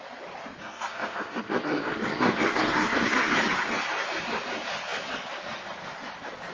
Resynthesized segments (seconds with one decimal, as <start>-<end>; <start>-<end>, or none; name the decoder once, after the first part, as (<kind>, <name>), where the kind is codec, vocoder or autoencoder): 0.6-3.3 (codec, SNAC)